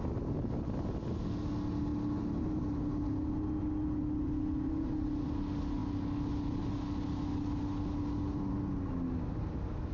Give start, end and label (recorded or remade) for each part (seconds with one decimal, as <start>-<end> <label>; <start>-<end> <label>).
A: 0.0-9.9 recorded